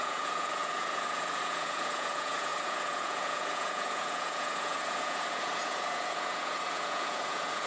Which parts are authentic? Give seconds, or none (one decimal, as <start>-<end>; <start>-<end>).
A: none